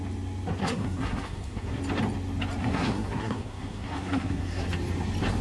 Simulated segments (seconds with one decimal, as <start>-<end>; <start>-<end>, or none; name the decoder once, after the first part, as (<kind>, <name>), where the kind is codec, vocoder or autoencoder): 0.6-1.8 (codec, SNAC); 2.6-4.7